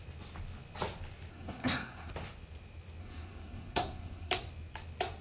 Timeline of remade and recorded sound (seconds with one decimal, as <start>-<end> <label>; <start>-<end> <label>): 0.0-1.3 recorded; 1.3-2.1 remade; 2.1-3.0 recorded; 3.0-4.3 remade; 4.3-5.2 recorded